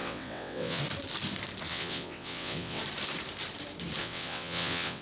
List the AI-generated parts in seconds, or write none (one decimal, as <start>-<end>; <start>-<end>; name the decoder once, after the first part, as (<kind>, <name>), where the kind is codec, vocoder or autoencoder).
0.0-0.8 (vocoder, WaveNeXt); 1.7-2.8; 4.0-5.0